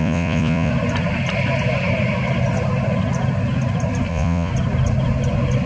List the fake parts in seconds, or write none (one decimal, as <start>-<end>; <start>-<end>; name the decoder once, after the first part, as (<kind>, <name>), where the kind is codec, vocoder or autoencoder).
0.0-0.7 (vocoder, Vocos); 4.1-4.5